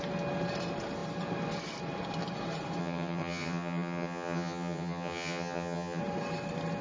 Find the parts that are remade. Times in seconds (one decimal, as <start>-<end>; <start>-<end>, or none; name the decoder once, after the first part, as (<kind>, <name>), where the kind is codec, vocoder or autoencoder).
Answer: 2.8-6.0 (vocoder, HiFi-GAN)